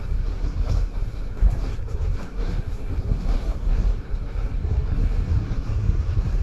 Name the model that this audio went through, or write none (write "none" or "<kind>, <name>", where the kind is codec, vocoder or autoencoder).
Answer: codec, SNAC